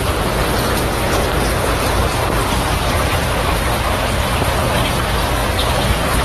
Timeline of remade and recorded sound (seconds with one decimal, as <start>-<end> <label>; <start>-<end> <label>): 0.0-1.3 recorded; 1.3-5.0 remade; 5.0-5.4 recorded; 5.4-6.2 remade